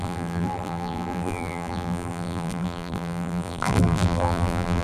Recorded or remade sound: remade